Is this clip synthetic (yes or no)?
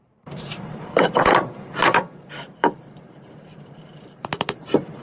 yes